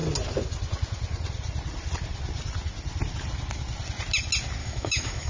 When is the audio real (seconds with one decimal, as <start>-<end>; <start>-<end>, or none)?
0.0-4.6